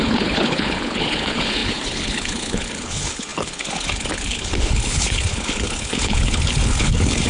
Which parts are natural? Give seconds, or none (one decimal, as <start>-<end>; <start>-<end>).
none

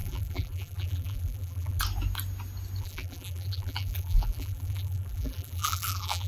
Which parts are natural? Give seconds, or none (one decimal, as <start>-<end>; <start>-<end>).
1.8-2.8

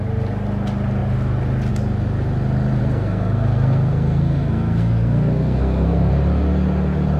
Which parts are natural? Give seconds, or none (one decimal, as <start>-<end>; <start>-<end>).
0.0-2.8; 6.1-7.2